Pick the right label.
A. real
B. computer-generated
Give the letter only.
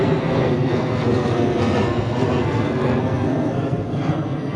B